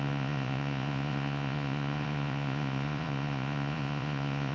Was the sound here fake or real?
fake